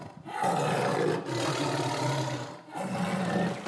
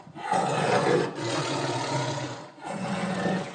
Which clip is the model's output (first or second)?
second